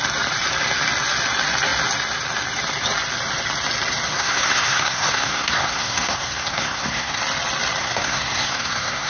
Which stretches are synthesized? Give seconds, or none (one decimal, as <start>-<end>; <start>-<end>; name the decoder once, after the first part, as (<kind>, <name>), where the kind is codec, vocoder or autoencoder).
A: 4.1-7.2 (codec, SNAC); 7.8-9.1